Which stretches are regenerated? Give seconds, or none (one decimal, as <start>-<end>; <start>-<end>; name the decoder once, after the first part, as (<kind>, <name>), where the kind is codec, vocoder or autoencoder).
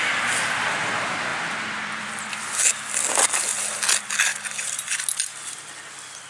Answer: none